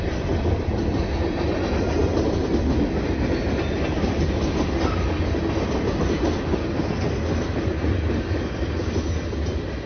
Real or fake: real